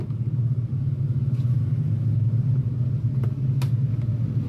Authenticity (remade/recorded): recorded